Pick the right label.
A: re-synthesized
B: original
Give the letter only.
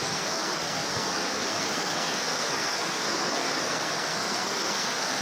A